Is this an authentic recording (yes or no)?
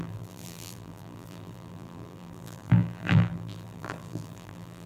no